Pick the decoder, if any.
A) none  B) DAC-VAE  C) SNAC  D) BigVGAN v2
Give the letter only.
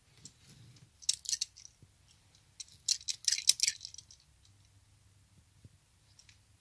A